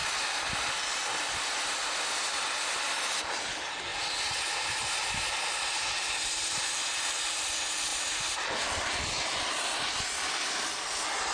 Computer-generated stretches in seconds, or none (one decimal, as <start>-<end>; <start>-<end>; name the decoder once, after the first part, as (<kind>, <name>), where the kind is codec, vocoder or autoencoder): 7.9-9.9 (vocoder, BigVGAN v2)